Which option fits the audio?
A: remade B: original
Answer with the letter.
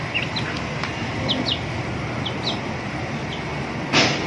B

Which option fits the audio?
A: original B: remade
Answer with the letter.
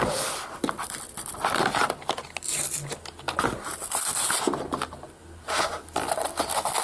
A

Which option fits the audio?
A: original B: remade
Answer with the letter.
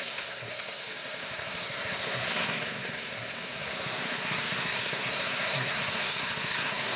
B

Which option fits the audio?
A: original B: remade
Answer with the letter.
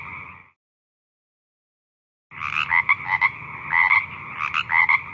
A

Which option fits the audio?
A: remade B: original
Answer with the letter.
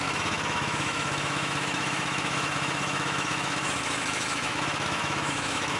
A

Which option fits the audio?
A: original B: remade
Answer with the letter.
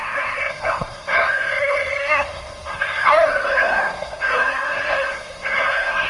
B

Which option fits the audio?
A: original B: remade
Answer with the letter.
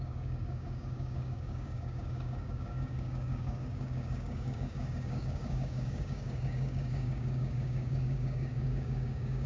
B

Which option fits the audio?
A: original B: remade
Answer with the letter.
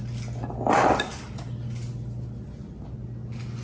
A